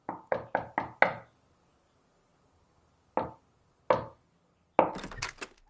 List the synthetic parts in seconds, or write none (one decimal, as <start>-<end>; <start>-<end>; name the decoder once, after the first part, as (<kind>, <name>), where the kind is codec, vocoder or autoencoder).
none

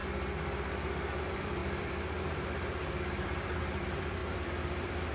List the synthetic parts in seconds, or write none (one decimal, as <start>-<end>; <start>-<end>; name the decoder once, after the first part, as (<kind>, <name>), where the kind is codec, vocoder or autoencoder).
1.2-5.1 (vocoder, BigVGAN v2)

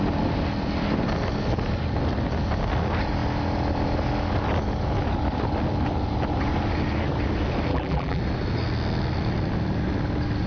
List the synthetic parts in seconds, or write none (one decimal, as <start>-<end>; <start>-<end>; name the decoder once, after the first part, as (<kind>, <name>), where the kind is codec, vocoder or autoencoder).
7.7-8.2 (vocoder, BigVGAN v2)

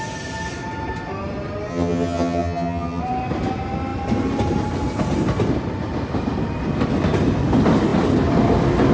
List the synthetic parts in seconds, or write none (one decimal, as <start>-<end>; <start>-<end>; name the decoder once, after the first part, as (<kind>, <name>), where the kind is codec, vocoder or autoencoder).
1.7-3.0 (vocoder, HiFi-GAN)

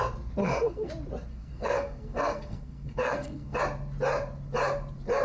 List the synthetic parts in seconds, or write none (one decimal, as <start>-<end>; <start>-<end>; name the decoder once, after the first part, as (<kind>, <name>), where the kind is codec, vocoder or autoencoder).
0.4-0.9 (codec, SNAC); 1.3-3.6

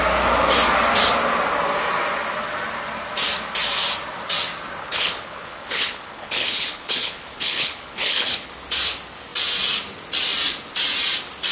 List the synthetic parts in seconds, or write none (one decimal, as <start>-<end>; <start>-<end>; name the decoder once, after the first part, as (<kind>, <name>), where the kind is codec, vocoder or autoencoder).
4.8-8.5 (codec, HILCodec)